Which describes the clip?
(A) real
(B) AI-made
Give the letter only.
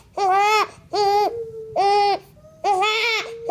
A